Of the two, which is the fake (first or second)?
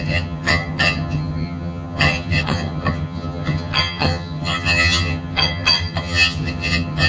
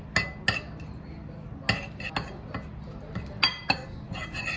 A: first